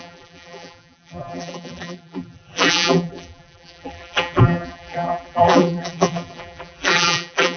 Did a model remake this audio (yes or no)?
yes